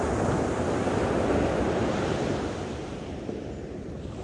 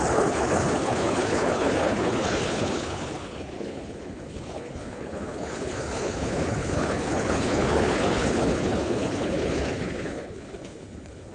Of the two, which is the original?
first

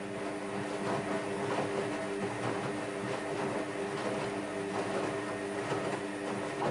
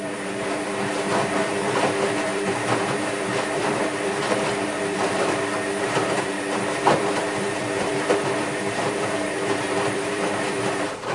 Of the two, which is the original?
first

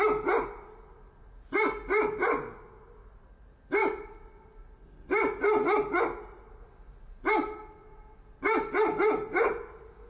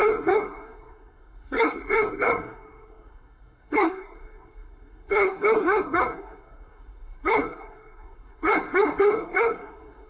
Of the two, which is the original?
first